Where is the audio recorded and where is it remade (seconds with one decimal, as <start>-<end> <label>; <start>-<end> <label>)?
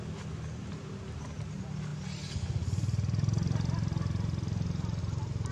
0.0-5.5 recorded